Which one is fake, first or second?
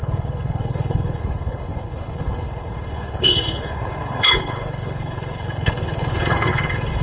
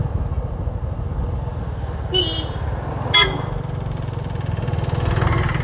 first